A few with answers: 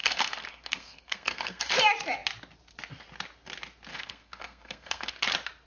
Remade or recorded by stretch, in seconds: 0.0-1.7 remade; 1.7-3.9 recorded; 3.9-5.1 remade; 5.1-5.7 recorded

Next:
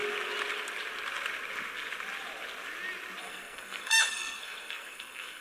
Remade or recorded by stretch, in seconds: 0.0-3.2 recorded; 3.2-5.4 remade

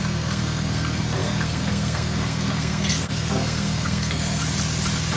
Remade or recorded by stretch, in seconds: 0.0-4.4 remade; 4.4-5.2 recorded

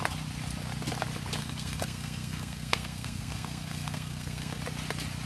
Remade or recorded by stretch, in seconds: 0.0-1.4 recorded; 1.4-4.6 remade; 4.6-5.3 recorded

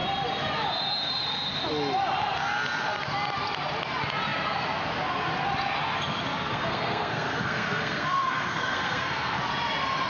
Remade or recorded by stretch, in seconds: 0.0-6.5 recorded; 6.5-9.4 remade; 9.4-10.1 recorded

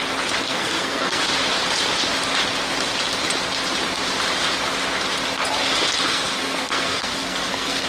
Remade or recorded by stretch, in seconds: 0.0-0.4 recorded; 0.4-1.2 remade; 1.2-6.1 recorded; 6.1-7.9 remade